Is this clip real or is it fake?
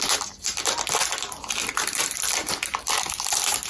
fake